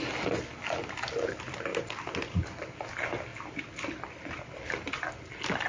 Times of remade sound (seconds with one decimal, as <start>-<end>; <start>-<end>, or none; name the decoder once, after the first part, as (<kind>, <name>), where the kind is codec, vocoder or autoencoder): 3.3-5.7 (vocoder, BigVGAN v2)